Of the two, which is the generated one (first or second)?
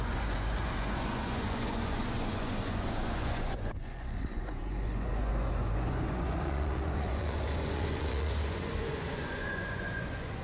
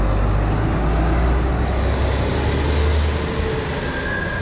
first